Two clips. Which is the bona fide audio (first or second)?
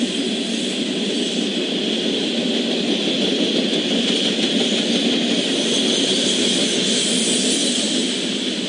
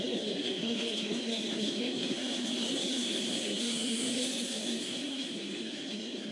first